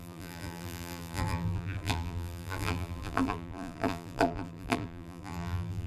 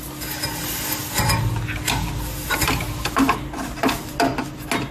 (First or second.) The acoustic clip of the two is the second